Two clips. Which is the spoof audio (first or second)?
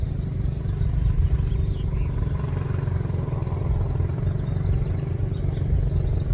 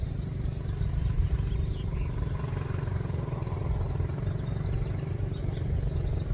second